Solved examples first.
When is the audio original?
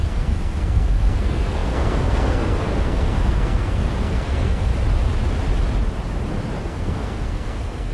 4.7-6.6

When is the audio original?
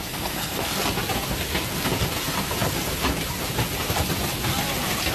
0.8-5.1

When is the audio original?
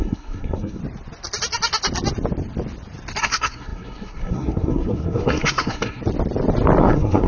0.8-3.2; 6.0-6.8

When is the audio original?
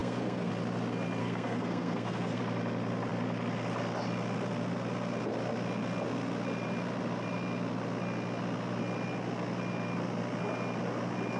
0.5-1.2; 2.4-11.4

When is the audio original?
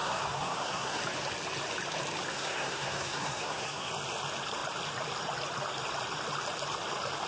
1.0-2.3; 3.9-7.3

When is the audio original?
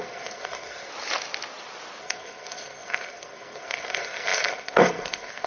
0.9-2.0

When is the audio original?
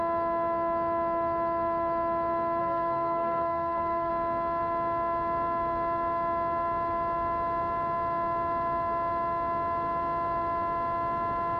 0.0-2.6; 4.1-11.6